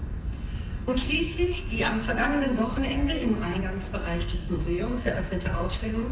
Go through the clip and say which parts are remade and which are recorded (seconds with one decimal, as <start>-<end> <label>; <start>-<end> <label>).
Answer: 0.0-3.6 remade; 3.6-4.0 recorded; 4.0-6.1 remade